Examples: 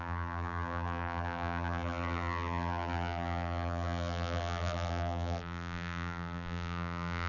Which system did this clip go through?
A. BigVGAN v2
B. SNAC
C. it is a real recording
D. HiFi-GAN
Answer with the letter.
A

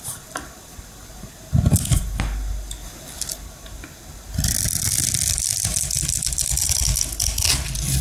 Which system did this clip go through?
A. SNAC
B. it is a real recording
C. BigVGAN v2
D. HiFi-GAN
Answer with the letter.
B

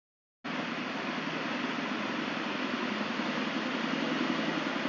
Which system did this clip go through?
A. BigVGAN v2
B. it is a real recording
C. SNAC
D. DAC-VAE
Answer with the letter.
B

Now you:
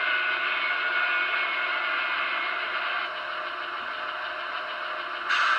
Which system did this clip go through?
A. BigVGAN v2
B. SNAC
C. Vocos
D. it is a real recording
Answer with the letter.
D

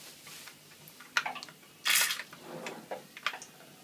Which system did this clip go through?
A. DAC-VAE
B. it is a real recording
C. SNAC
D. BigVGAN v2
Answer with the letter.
B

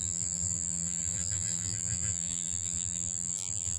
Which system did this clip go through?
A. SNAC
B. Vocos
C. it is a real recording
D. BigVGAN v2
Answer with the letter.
D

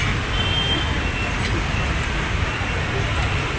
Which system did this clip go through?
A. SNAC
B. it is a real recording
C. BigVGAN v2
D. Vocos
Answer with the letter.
B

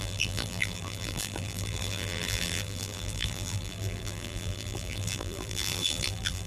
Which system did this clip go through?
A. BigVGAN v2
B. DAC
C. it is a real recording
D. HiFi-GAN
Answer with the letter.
A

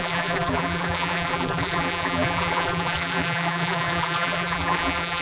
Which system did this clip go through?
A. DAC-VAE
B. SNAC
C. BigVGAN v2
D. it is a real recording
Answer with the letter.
C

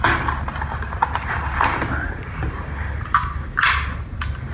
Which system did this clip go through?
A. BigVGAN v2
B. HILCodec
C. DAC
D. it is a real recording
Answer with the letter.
D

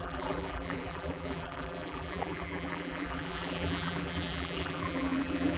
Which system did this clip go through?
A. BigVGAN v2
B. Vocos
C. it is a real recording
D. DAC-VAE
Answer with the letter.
A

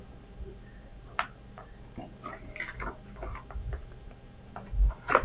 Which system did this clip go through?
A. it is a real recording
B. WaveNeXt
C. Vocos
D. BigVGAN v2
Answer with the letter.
D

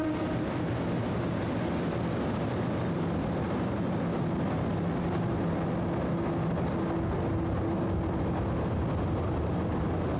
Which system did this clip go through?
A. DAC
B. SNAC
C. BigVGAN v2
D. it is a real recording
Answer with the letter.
D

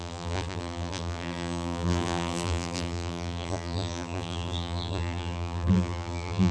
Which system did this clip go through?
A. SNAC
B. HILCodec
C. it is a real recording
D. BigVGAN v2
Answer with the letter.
D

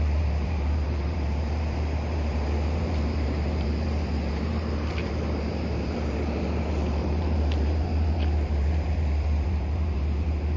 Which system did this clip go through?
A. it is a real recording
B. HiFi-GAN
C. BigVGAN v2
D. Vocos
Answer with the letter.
C